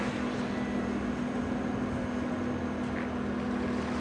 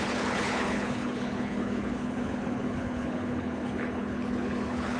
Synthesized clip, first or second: second